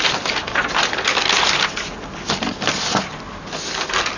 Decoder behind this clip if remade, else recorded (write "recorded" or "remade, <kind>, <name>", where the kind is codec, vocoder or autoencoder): recorded